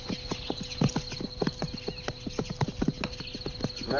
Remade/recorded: recorded